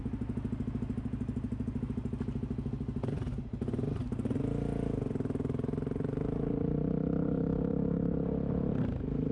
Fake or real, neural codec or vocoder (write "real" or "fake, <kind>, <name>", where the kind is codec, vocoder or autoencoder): real